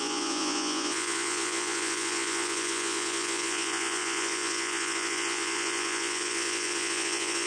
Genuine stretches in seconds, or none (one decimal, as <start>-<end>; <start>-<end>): none